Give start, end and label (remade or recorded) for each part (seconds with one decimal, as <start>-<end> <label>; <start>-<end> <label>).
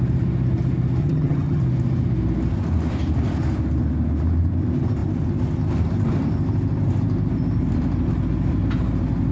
0.0-1.0 recorded; 1.0-1.6 remade; 1.6-9.3 recorded